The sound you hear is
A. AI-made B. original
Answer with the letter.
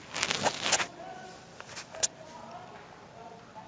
B